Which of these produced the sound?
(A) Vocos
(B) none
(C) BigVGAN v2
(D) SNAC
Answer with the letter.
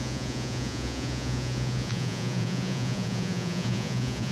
A